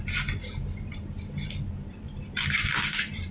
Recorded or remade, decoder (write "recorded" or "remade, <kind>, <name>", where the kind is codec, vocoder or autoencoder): remade, vocoder, BigVGAN v2